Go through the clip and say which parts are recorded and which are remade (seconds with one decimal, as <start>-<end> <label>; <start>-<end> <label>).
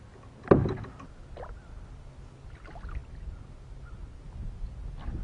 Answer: 0.0-5.2 recorded